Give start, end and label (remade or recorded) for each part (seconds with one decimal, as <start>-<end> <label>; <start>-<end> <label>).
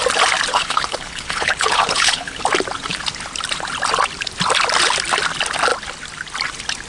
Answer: 0.0-0.5 recorded; 0.5-2.4 remade; 2.4-6.9 recorded